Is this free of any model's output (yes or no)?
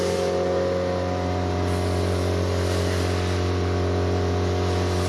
yes